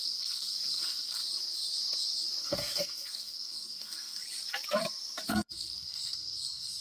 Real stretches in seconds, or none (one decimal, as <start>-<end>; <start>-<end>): 1.2-2.4; 4.2-5.3